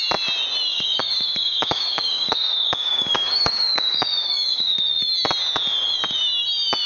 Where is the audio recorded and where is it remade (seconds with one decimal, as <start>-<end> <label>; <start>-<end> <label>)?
0.0-0.7 recorded; 0.7-4.7 remade; 4.7-6.9 recorded